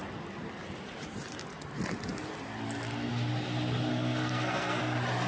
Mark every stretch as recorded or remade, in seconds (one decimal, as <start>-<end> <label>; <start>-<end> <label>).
0.0-3.9 recorded; 3.9-4.8 remade; 4.8-5.3 recorded